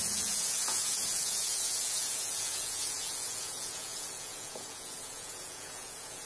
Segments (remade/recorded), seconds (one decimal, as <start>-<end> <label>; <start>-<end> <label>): 0.0-6.3 remade